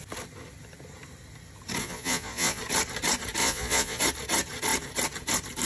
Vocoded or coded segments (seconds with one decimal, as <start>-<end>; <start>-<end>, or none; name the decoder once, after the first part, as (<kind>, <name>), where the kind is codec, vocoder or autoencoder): 1.8-2.6 (vocoder, Vocos); 3.4-4.0